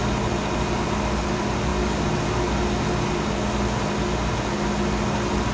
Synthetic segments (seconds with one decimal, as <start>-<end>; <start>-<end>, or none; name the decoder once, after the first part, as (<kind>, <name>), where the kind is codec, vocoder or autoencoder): none